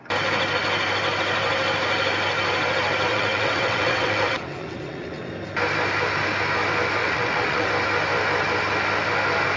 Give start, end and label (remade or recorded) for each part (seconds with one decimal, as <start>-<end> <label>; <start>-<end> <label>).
0.0-3.1 recorded; 3.1-5.3 remade; 5.3-7.0 recorded; 7.0-7.7 remade; 7.7-9.6 recorded